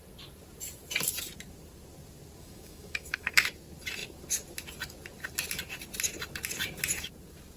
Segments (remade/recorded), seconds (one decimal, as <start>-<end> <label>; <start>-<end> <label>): 0.0-2.4 recorded; 2.4-3.5 remade; 3.5-7.6 recorded